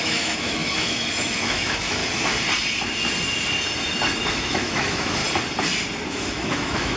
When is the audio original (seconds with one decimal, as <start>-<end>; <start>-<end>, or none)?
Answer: 2.0-4.3; 5.2-6.1